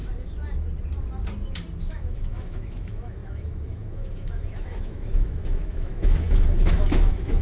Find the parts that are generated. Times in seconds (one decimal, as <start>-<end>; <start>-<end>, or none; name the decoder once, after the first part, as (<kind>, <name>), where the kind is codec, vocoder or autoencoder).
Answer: 1.9-7.4 (autoencoder, DAC-VAE)